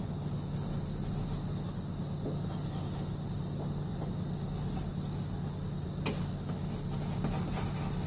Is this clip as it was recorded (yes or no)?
yes